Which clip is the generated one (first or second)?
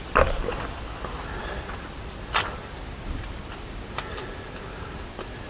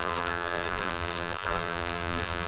second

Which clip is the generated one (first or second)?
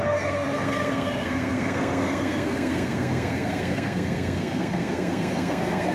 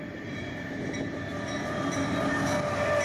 first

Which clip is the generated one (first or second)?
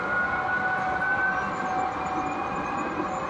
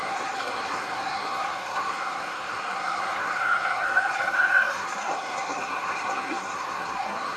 second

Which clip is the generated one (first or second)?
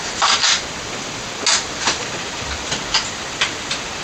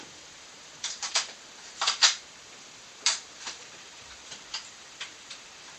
second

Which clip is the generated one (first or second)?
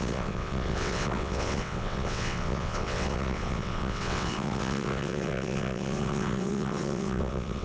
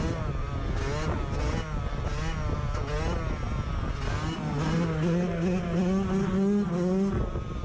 first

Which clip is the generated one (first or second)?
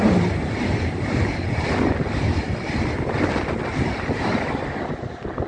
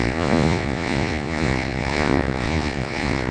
second